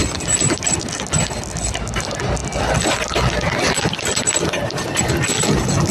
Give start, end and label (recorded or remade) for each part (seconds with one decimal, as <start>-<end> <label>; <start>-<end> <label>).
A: 0.0-5.9 recorded